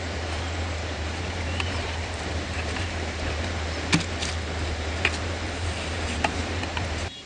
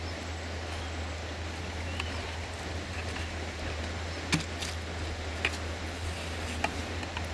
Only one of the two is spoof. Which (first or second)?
first